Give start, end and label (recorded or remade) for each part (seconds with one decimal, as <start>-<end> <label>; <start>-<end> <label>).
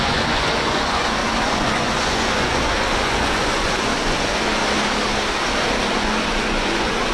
0.0-4.6 remade; 4.6-5.9 recorded; 5.9-7.1 remade